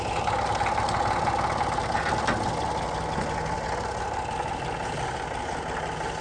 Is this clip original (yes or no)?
yes